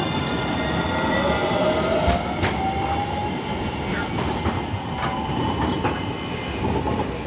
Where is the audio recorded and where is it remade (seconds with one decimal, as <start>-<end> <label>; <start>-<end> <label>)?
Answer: 0.0-7.3 recorded